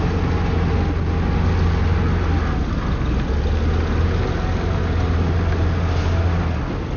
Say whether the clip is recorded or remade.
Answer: recorded